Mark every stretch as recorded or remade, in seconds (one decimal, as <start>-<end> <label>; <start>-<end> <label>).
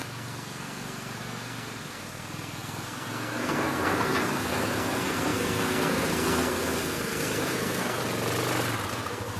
0.0-8.0 remade; 8.0-8.9 recorded; 8.9-9.4 remade